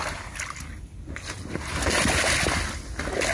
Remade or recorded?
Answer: recorded